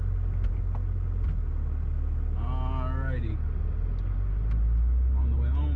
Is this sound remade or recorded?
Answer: recorded